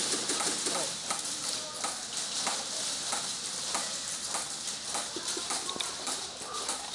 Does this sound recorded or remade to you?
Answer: recorded